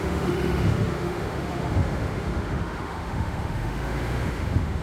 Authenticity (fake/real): fake